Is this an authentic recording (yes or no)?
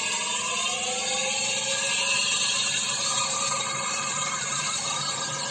yes